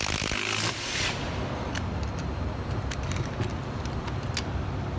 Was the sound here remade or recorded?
recorded